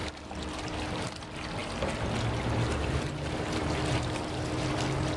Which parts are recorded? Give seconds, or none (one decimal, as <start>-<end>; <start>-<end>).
0.0-5.2